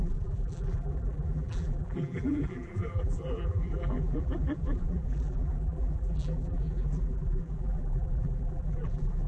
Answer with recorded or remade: remade